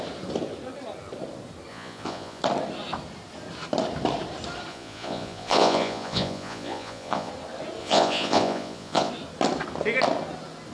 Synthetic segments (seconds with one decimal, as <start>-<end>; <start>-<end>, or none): 1.7-2.4; 4.7-7.3; 7.8-9.1

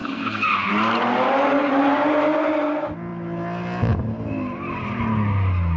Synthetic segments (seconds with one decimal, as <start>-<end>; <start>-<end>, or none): 0.0-0.7

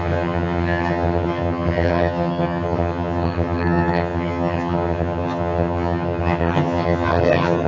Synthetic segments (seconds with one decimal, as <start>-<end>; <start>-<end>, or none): 0.0-7.7